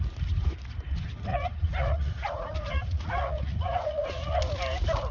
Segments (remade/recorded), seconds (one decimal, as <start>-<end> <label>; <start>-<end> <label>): 0.0-1.3 recorded; 1.3-4.4 remade; 4.4-5.1 recorded